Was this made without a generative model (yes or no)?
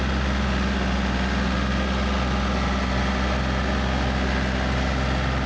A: yes